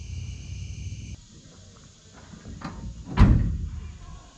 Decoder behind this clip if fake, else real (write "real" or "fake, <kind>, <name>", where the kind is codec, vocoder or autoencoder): real